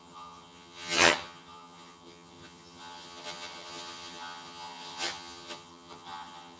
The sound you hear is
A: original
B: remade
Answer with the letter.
B